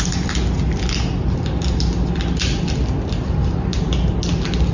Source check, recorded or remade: recorded